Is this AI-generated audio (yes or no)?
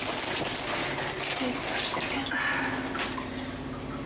no